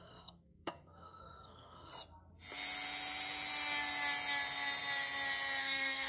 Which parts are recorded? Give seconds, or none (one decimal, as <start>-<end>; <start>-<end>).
1.9-5.6